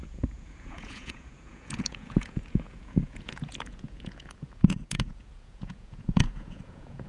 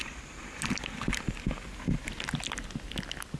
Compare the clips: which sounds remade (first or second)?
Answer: first